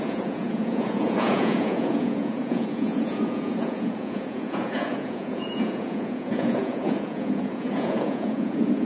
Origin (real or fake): fake